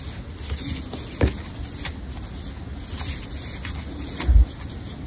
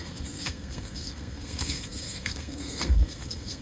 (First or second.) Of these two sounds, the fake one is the second